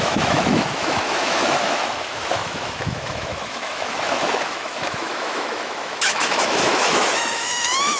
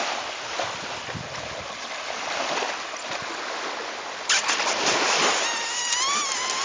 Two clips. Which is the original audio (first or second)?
second